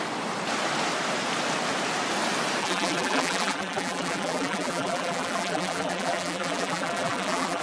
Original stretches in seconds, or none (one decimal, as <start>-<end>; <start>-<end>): 0.0-2.6